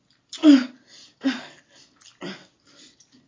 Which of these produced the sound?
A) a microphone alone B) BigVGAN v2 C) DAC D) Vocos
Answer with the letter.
A